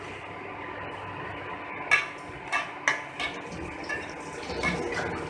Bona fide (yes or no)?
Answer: yes